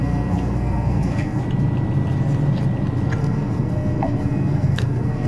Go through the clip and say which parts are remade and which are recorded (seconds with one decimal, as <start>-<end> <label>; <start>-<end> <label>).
0.0-1.4 remade; 1.4-3.2 recorded; 3.2-5.3 remade